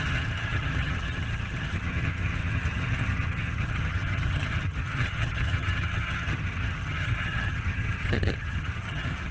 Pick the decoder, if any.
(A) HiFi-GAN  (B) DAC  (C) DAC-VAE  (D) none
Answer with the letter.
A